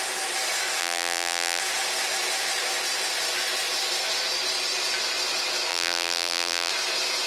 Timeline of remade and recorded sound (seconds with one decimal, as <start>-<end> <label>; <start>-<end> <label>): 0.0-0.8 recorded; 0.8-1.6 remade; 1.6-5.7 recorded; 5.7-6.7 remade; 6.7-7.3 recorded